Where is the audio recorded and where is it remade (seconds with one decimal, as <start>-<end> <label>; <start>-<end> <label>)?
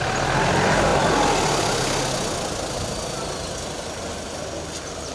0.0-5.1 recorded